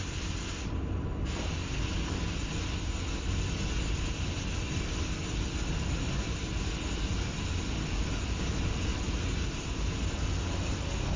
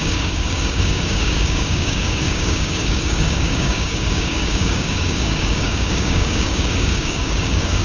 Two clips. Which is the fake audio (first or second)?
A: second